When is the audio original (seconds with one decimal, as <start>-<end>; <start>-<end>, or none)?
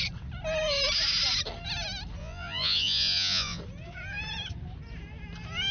0.0-2.2; 3.6-5.7